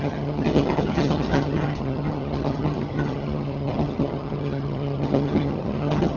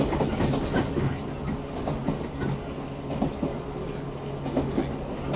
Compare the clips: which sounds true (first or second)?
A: second